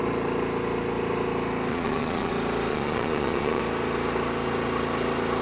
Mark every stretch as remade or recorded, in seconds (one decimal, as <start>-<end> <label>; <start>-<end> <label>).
0.0-1.7 recorded; 1.7-2.3 remade; 2.3-2.7 recorded; 2.7-3.6 remade; 3.6-5.4 recorded

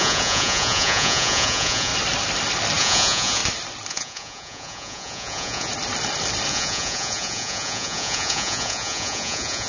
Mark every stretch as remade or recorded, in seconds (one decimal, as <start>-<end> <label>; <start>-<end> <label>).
0.0-1.9 remade; 1.9-2.8 recorded; 2.8-3.4 remade; 3.4-3.9 recorded; 3.9-5.7 remade; 5.7-6.5 recorded; 6.5-9.7 remade

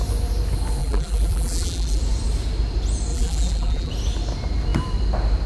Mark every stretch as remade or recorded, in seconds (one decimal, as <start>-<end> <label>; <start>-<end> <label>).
0.0-0.8 recorded; 0.8-2.0 remade; 2.0-3.1 recorded; 3.1-3.9 remade; 3.9-5.5 recorded

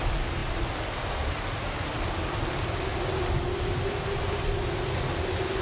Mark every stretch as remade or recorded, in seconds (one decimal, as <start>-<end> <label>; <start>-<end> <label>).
0.0-5.6 recorded

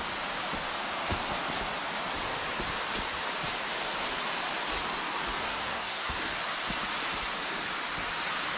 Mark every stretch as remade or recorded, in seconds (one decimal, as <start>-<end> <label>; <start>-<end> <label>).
0.0-5.4 recorded; 5.4-6.1 remade; 6.1-8.6 recorded

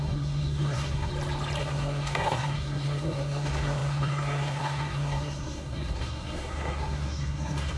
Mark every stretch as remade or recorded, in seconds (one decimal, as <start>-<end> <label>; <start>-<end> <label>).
0.0-1.1 remade; 1.1-1.6 recorded; 1.6-7.8 remade

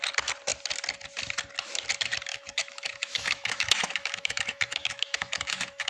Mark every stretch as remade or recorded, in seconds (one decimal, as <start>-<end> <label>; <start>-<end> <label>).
0.0-2.3 recorded; 2.3-5.9 remade

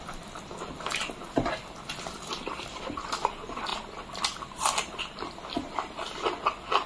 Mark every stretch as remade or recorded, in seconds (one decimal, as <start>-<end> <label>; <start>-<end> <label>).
0.0-6.9 recorded